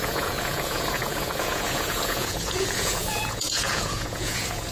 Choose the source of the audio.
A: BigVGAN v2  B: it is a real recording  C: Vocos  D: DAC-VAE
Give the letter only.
C